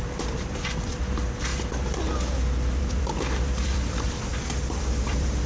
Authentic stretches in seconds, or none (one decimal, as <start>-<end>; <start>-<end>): 1.5-2.8; 4.3-4.8